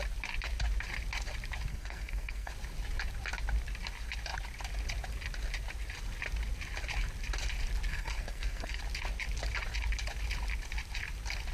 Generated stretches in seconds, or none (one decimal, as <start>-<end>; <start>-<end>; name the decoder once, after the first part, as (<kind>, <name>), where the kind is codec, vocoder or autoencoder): 1.7-2.5 (codec, SNAC); 7.9-8.8